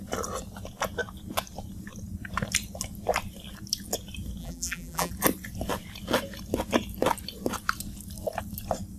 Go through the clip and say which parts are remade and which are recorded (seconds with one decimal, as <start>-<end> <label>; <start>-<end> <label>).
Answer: 0.0-4.4 recorded; 4.4-5.1 remade; 5.1-9.0 recorded

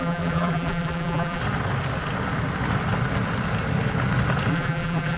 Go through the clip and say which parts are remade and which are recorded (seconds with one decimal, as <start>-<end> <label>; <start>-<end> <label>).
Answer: 0.0-1.4 remade; 1.4-4.5 recorded; 4.5-5.2 remade

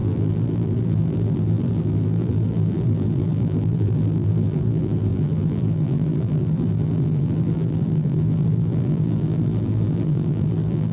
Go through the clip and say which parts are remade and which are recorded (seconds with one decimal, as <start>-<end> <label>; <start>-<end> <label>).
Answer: 0.0-10.9 remade

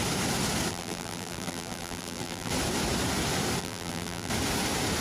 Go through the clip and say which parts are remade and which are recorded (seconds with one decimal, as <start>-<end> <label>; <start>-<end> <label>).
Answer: 0.0-0.7 recorded; 0.7-2.5 remade; 2.5-3.6 recorded; 3.6-4.3 remade; 4.3-5.0 recorded

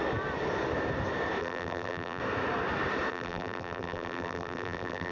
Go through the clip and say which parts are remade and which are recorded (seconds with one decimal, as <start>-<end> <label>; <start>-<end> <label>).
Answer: 0.0-1.4 recorded; 1.4-2.2 remade; 2.2-3.1 recorded; 3.1-5.1 remade

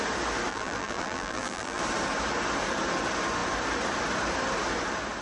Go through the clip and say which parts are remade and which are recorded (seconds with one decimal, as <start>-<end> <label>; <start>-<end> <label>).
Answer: 0.0-0.5 recorded; 0.5-1.8 remade; 1.8-5.2 recorded